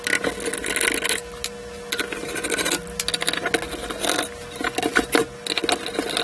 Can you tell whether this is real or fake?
real